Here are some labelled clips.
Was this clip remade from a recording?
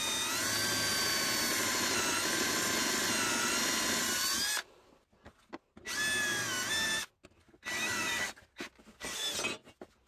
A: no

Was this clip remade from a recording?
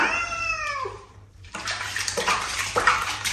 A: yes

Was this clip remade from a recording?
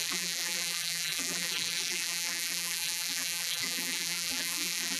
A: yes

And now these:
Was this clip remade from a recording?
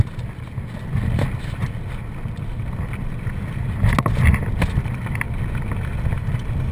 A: no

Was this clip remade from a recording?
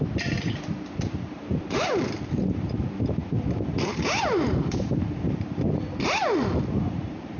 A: yes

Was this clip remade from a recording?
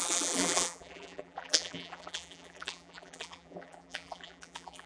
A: yes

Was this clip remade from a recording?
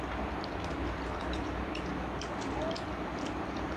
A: yes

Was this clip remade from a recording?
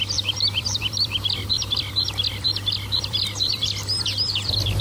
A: yes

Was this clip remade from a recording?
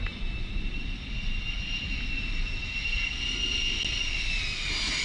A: no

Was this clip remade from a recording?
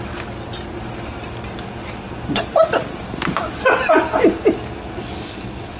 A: no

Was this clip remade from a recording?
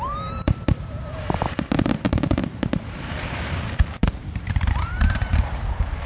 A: yes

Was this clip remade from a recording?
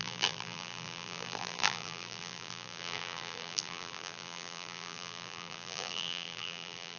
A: yes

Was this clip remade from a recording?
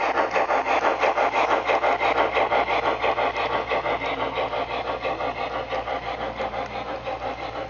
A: no